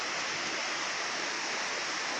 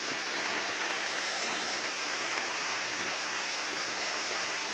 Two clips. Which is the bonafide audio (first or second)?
first